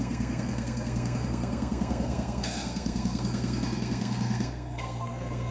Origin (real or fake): fake